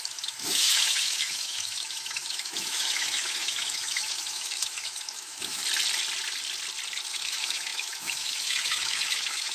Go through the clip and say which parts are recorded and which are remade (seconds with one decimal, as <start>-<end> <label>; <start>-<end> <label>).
0.0-5.6 remade; 5.6-7.1 recorded; 7.1-9.5 remade